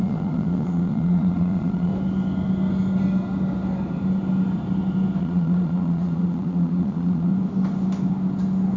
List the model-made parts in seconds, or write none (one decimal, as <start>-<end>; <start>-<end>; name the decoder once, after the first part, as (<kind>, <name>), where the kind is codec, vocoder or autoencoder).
0.0-1.9 (vocoder, Vocos); 5.2-7.3